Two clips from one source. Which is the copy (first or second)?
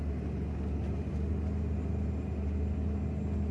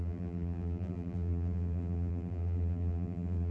second